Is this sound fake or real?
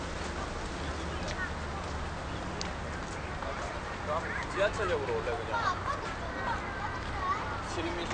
real